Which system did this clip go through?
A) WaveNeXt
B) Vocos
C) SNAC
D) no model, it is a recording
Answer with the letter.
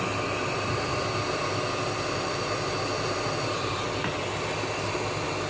D